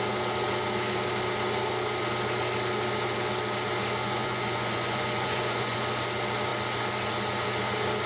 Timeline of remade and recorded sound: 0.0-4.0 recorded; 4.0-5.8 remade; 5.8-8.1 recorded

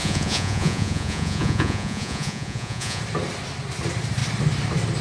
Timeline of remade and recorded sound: 0.0-3.0 remade; 3.0-5.0 recorded

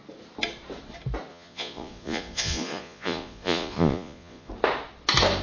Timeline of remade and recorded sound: 0.0-1.3 recorded; 1.3-4.5 remade; 4.5-5.4 recorded

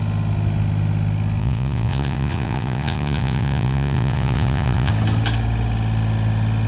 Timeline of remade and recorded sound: 0.0-1.4 recorded; 1.4-4.9 remade; 4.9-6.7 recorded

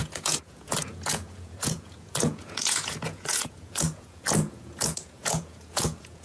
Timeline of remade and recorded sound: 0.0-6.2 remade

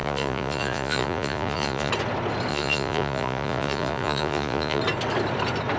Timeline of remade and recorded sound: 0.0-1.9 remade; 1.9-2.5 recorded; 2.5-4.8 remade; 4.8-5.8 recorded